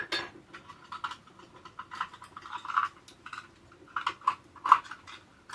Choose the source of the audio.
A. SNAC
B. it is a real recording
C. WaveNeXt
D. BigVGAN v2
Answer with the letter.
B